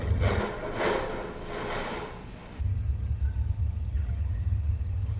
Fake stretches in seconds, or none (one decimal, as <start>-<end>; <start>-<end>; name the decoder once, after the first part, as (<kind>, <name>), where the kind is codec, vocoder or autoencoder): 0.0-0.4 (vocoder, HiFi-GAN); 2.6-5.2